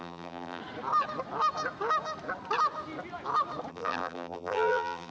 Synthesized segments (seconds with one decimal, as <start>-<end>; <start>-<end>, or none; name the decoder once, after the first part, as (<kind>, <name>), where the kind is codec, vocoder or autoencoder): 0.0-0.6 (vocoder, BigVGAN v2); 3.7-5.1